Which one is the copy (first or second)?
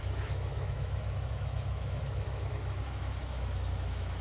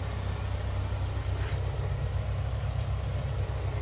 first